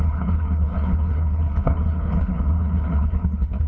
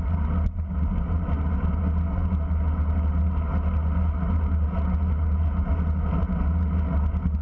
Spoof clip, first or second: first